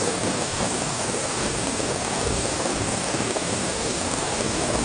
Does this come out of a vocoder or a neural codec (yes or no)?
yes